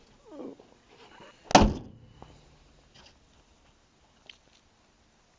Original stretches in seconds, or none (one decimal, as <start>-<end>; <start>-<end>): 0.0-5.4